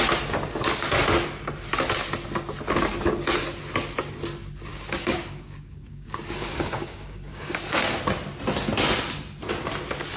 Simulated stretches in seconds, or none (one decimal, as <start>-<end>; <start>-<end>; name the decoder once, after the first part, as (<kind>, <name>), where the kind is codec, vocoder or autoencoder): 4.7-8.0 (codec, DAC)